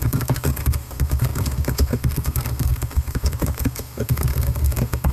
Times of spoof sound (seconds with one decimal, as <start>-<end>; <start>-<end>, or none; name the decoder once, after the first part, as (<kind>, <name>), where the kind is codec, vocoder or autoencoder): 0.0-5.1 (codec, SNAC)